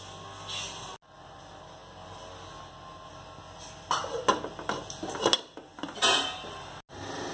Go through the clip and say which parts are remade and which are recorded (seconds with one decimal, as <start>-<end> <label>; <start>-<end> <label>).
0.0-7.3 recorded